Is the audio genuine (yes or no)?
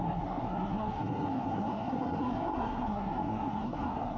no